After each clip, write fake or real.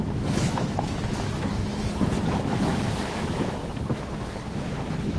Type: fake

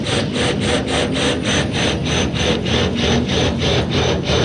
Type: real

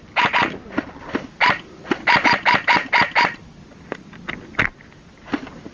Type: real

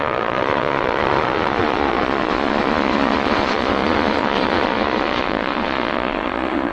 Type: fake